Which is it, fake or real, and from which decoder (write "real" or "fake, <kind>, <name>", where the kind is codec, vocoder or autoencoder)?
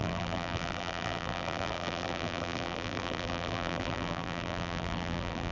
fake, vocoder, BigVGAN v2